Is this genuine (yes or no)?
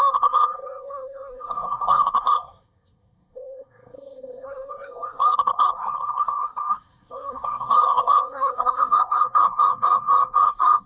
no